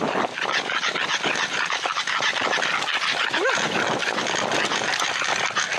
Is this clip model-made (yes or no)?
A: no